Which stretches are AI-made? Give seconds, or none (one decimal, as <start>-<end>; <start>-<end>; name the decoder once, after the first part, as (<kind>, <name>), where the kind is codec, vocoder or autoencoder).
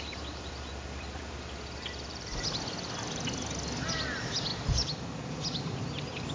0.0-4.5 (vocoder, BigVGAN v2); 5.3-6.3